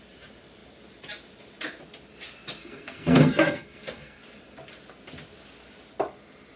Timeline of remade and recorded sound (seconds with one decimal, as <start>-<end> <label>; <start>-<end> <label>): 0.0-2.6 recorded; 2.6-4.2 remade; 4.2-6.6 recorded